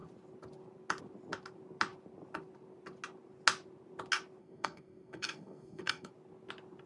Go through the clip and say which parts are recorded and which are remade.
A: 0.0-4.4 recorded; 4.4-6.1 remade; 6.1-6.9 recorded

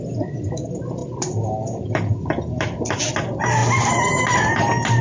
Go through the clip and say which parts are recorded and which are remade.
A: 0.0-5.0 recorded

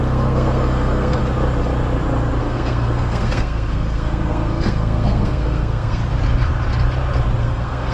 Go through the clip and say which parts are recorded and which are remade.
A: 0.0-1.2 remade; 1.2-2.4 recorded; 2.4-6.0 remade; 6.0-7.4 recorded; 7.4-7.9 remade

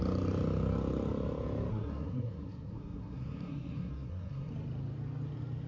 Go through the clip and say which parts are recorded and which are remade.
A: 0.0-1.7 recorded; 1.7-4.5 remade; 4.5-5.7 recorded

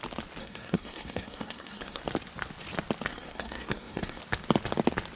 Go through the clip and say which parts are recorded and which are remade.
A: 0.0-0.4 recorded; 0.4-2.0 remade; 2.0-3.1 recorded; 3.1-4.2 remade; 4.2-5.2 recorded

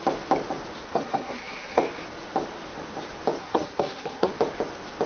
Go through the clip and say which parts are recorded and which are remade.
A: 0.0-0.9 recorded; 0.9-1.8 remade; 1.8-3.4 recorded; 3.4-4.3 remade; 4.3-5.1 recorded

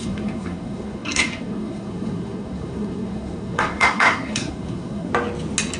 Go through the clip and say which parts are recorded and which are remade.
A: 0.0-5.1 remade; 5.1-5.8 recorded

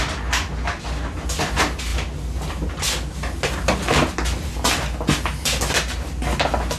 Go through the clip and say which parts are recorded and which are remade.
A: 0.0-6.8 recorded